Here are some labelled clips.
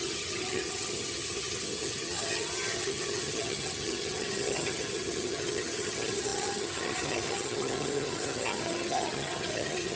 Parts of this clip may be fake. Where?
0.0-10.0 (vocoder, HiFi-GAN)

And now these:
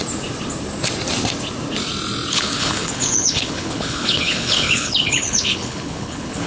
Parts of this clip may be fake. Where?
2.3-6.5 (codec, HILCodec)

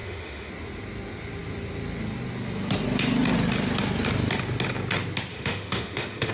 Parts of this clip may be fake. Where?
0.0-0.5 (autoencoder, DAC-VAE); 5.3-6.3